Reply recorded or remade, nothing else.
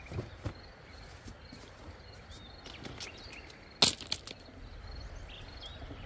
recorded